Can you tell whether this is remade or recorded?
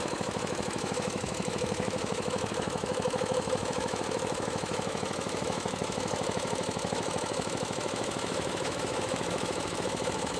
remade